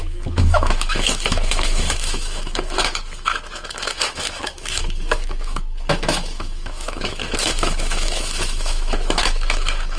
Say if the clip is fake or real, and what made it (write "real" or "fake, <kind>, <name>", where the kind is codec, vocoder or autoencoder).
fake, autoencoder, DAC-VAE